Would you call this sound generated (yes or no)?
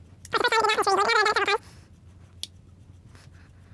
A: no